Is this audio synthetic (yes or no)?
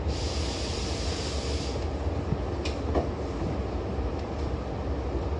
no